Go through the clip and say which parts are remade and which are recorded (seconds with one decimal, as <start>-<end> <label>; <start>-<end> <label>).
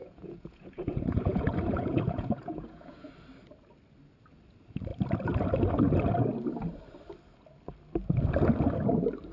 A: 0.0-3.1 remade; 3.1-9.3 recorded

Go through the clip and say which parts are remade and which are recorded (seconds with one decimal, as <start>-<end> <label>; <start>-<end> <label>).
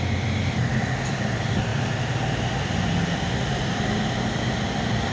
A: 0.0-5.1 recorded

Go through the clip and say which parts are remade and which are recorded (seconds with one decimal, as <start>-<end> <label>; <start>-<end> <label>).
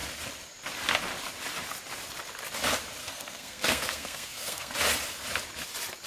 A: 0.0-3.0 recorded; 3.0-4.7 remade; 4.7-6.1 recorded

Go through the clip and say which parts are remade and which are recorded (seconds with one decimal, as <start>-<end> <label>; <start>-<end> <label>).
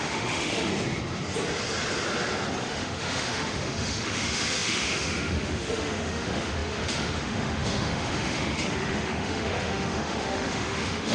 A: 0.0-0.7 remade; 0.7-2.6 recorded; 2.6-11.1 remade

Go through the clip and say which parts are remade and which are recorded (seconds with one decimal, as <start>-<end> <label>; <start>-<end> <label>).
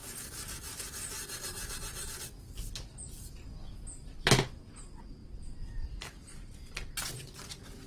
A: 0.0-7.9 recorded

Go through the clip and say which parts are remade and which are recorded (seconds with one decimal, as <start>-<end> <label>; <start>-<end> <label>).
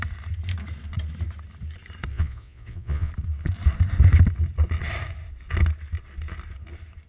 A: 0.0-2.1 recorded; 2.1-3.1 remade; 3.1-7.1 recorded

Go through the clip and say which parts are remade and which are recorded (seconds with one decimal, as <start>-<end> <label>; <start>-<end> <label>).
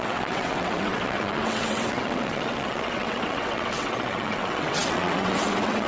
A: 0.0-5.9 remade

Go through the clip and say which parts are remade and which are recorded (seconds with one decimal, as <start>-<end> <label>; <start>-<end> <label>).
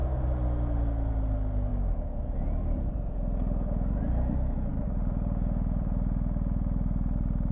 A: 0.0-7.5 recorded